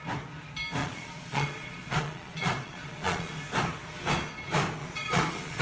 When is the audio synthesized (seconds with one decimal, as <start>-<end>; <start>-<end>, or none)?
0.8-3.3; 4.8-5.6